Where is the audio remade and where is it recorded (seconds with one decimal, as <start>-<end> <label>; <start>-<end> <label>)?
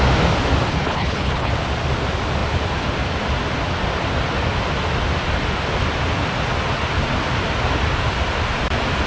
0.0-0.7 recorded; 0.7-1.5 remade; 1.5-9.1 recorded